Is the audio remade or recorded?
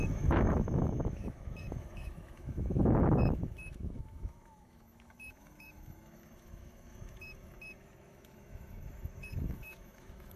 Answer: remade